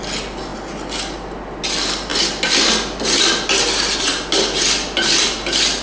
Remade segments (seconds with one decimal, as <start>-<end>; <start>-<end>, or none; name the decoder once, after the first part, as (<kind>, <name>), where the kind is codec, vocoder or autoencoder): none